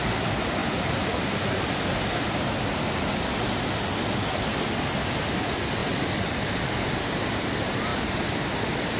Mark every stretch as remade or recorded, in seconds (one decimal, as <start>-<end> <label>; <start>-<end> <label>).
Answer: 0.0-0.6 recorded; 0.6-1.4 remade; 1.4-5.8 recorded; 5.8-6.3 remade; 6.3-7.9 recorded; 7.9-9.0 remade